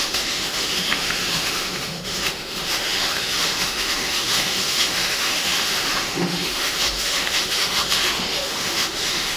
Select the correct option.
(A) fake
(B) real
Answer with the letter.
A